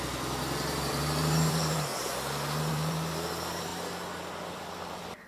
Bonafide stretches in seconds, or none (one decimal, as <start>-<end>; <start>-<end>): 1.9-2.7; 3.7-4.3